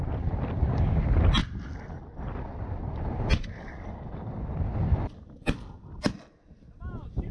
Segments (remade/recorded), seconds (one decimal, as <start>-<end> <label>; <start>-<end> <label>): 0.0-7.3 recorded